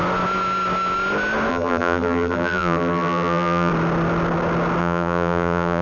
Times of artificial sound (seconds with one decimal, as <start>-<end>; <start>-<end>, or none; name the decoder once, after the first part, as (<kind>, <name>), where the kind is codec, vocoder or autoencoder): 1.5-3.7 (vocoder, BigVGAN v2); 4.8-5.8